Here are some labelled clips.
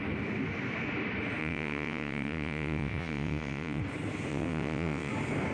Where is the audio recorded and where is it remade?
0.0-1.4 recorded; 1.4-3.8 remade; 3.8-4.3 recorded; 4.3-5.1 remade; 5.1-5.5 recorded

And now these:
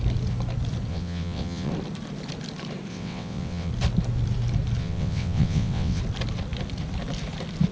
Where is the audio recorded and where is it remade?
0.0-0.9 recorded; 0.9-1.7 remade; 1.7-2.9 recorded; 2.9-3.7 remade; 3.7-4.8 recorded; 4.8-6.0 remade; 6.0-7.7 recorded

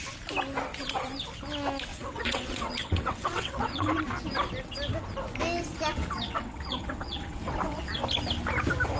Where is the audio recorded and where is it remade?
0.0-1.9 recorded; 1.9-4.0 remade; 4.0-5.9 recorded; 5.9-8.0 remade; 8.0-9.0 recorded

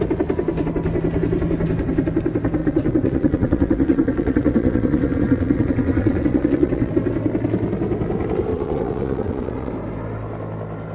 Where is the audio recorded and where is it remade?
0.0-2.6 recorded; 2.6-6.9 remade; 6.9-8.5 recorded; 8.5-9.7 remade; 9.7-10.9 recorded

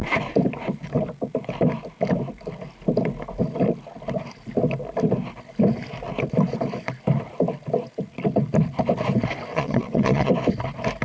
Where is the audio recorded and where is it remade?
0.0-9.5 recorded; 9.5-10.3 remade; 10.3-11.0 recorded

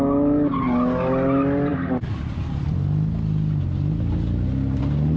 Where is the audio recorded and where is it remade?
0.0-5.2 recorded